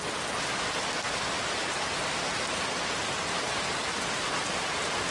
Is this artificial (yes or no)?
no